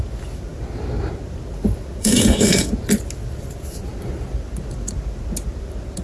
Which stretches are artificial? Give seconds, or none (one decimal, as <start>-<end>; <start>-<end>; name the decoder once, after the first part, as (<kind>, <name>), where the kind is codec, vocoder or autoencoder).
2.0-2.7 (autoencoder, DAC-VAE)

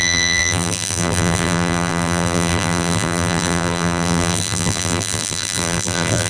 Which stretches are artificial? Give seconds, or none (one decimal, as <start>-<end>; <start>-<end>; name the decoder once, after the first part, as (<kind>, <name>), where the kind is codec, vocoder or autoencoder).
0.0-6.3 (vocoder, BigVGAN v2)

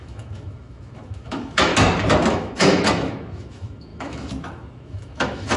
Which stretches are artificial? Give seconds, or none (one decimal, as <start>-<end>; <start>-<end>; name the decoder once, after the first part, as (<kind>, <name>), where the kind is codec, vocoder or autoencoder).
0.0-1.7 (autoencoder, DAC-VAE); 2.3-5.6

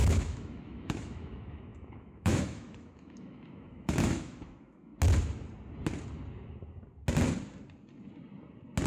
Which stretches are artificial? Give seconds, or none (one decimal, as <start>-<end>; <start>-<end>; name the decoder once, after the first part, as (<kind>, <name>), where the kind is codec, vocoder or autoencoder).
0.0-4.9 (autoencoder, DAC-VAE)